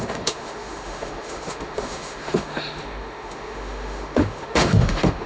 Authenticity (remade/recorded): remade